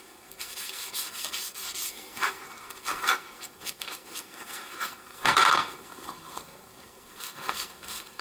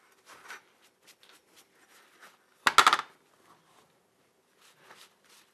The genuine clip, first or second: second